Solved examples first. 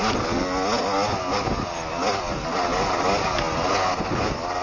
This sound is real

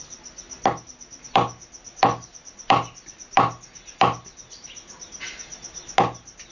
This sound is real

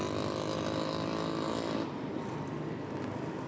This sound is real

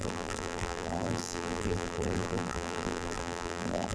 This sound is fake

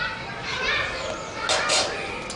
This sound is real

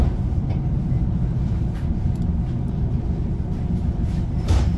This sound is fake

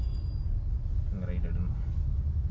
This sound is real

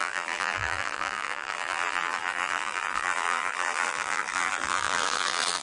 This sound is fake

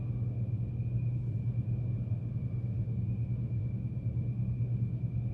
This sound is real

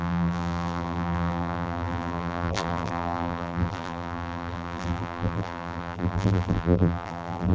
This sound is fake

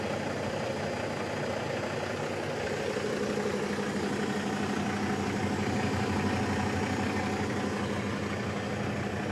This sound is real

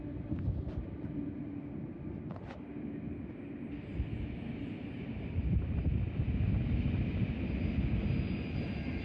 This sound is real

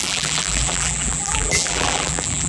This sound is fake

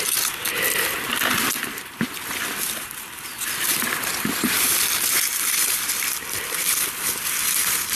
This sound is fake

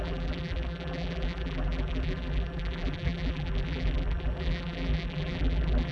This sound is fake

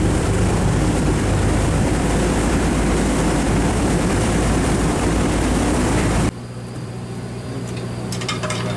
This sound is fake